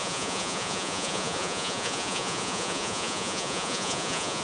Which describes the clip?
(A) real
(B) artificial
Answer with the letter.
B